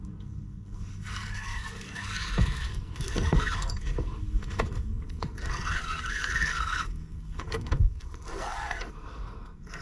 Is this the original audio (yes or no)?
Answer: no